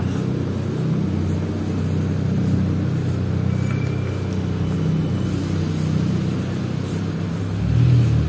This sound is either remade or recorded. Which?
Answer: recorded